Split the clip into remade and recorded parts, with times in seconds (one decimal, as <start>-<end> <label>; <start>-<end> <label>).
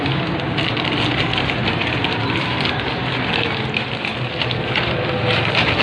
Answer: 0.0-5.8 recorded